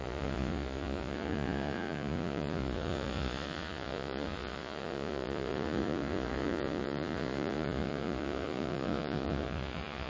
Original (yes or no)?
no